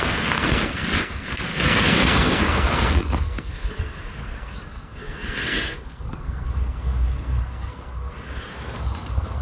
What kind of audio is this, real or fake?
fake